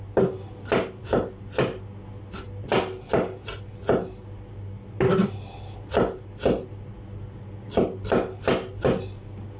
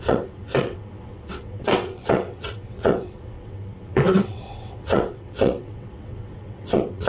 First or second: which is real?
first